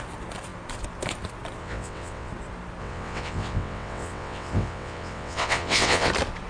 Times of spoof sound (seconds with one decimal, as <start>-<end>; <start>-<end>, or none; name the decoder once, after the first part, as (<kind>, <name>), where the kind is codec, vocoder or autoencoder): 1.6-2.3 (vocoder, WaveNeXt); 2.8-6.1